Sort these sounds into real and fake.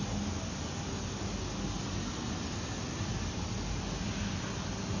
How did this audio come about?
real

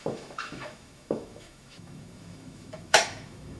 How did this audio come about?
fake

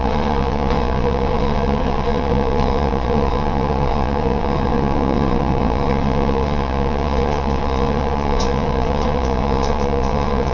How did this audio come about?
fake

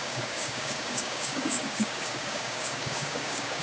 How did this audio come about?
fake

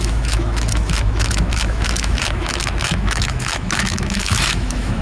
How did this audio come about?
fake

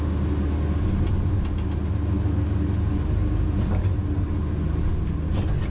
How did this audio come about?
real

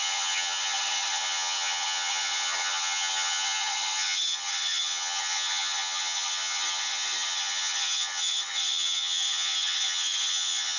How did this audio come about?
fake